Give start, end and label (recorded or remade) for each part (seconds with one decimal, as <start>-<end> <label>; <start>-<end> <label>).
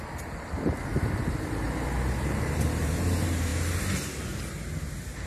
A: 0.0-0.9 recorded; 0.9-2.9 remade; 2.9-5.3 recorded